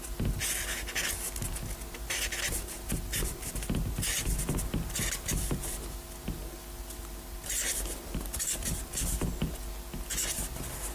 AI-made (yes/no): no